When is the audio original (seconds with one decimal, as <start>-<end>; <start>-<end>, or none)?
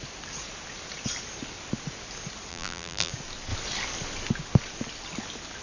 0.0-2.5; 3.1-5.6